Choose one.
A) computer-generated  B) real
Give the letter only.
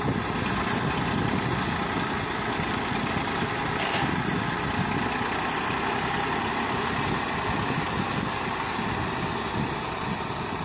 B